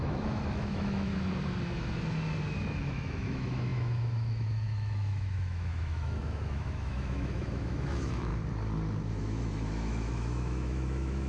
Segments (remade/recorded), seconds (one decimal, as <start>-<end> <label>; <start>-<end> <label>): 0.0-1.1 remade; 1.1-2.8 recorded; 2.8-8.3 remade; 8.3-9.1 recorded; 9.1-11.3 remade